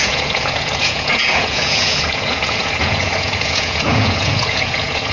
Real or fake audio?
fake